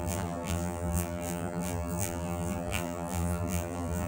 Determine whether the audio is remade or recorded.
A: remade